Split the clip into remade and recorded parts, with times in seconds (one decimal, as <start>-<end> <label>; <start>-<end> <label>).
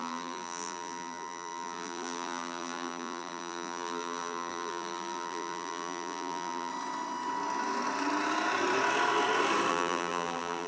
0.0-6.7 remade; 6.7-9.7 recorded; 9.7-10.7 remade